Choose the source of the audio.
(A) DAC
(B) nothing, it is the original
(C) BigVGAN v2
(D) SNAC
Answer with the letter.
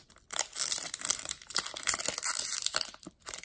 C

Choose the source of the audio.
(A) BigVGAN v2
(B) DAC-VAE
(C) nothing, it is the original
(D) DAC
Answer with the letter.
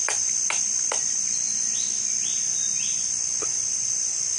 C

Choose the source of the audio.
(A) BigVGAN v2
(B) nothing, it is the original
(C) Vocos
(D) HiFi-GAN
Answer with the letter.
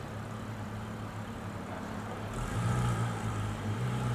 A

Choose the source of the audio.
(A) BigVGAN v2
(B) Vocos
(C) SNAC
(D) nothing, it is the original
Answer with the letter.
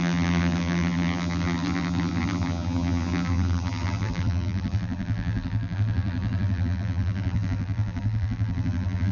A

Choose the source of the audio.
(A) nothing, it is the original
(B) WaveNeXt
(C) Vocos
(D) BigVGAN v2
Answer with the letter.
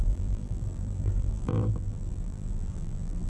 D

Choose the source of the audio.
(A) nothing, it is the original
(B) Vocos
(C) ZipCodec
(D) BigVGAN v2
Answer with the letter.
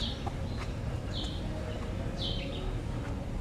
A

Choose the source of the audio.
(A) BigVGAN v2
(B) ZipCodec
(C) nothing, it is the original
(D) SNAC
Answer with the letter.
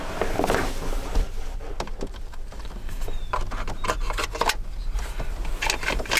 C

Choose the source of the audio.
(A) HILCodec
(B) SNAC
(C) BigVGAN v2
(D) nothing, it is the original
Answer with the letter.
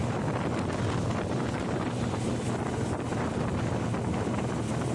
C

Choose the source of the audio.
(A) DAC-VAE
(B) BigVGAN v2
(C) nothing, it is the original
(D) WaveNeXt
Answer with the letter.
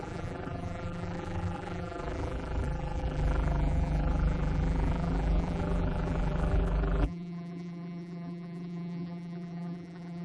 B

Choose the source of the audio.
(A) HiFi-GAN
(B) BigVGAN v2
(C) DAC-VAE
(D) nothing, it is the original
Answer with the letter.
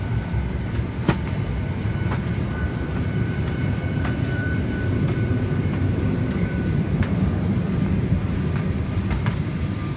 B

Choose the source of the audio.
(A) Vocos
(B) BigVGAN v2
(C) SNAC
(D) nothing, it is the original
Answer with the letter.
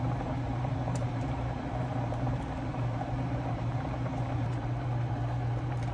B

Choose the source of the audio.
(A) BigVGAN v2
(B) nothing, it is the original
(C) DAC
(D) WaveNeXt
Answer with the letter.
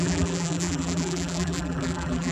A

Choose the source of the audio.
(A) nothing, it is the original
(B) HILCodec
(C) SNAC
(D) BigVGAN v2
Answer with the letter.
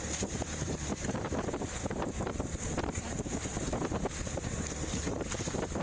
D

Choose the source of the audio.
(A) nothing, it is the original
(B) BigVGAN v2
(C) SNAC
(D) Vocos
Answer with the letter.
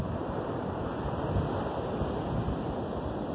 A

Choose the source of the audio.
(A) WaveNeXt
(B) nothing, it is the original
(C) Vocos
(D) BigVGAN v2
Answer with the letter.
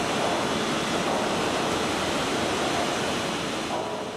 D